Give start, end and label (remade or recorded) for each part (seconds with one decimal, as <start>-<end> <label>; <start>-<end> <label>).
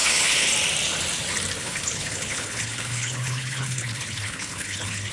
0.0-0.5 remade; 0.5-1.6 recorded; 1.6-5.1 remade